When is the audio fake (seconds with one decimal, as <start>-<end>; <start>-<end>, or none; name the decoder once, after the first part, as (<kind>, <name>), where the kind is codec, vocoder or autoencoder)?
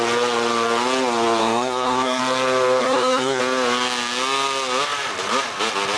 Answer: 1.4-2.2 (codec, SNAC); 2.8-3.4